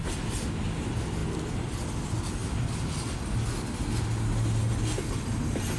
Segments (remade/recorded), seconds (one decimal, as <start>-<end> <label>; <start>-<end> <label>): 0.0-5.8 recorded